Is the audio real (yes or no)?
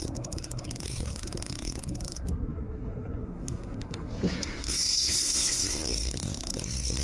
no